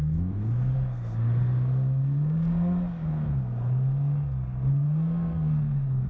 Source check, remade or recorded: remade